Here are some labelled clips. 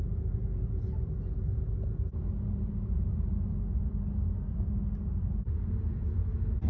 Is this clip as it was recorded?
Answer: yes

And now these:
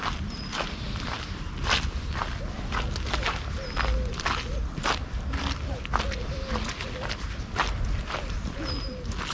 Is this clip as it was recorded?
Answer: yes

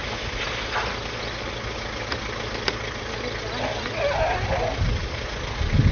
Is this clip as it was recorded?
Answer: yes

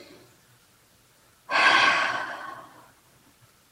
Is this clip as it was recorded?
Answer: yes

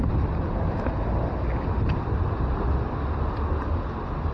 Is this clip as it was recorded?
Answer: yes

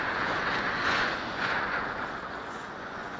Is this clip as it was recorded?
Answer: no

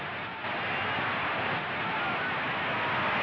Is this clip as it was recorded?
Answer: yes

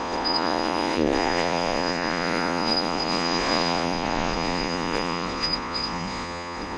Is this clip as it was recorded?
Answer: no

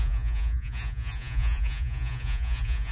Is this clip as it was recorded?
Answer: no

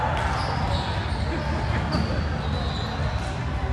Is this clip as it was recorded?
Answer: yes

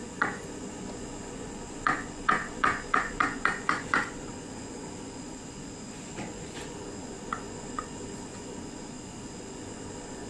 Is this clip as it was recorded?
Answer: no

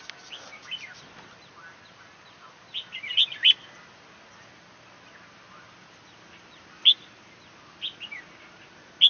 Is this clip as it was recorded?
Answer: yes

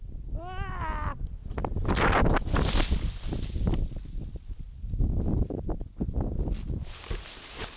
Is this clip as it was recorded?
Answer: yes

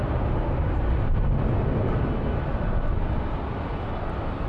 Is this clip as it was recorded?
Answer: yes